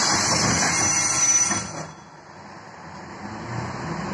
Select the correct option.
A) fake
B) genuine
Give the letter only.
B